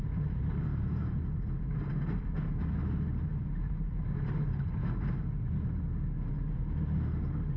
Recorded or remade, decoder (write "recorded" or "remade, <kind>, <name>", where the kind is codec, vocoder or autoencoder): recorded